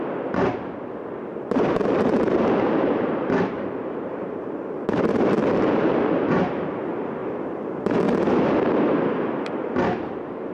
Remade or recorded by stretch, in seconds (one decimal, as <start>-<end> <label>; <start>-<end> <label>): 0.0-1.3 recorded; 1.3-5.9 remade; 5.9-7.2 recorded; 7.2-8.2 remade; 8.2-10.5 recorded